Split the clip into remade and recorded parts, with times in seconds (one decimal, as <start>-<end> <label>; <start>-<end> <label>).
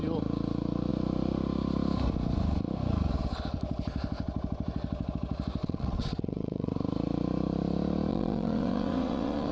0.0-5.6 recorded; 5.6-6.7 remade; 6.7-8.1 recorded; 8.1-9.5 remade